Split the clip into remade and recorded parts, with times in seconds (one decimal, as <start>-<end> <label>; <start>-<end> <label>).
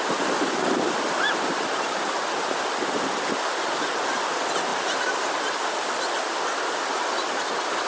0.0-7.9 recorded